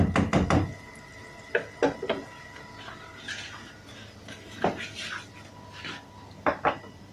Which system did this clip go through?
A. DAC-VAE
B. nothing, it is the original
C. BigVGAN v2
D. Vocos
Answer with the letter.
B